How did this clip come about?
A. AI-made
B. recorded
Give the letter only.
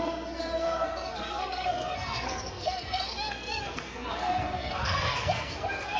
A